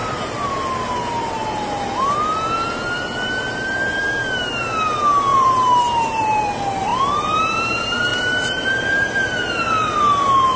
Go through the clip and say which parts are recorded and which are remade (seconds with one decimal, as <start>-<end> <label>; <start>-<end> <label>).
0.0-0.5 remade; 0.5-5.3 recorded; 5.3-6.5 remade; 6.5-8.1 recorded; 8.1-8.8 remade; 8.8-10.6 recorded